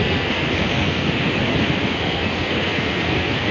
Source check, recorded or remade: remade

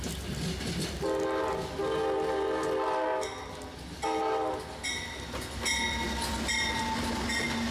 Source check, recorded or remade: recorded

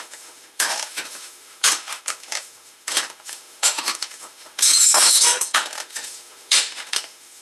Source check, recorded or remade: remade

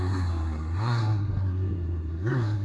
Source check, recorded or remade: remade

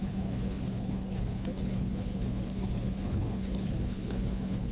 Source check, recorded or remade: remade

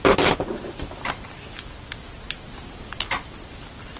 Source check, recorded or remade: recorded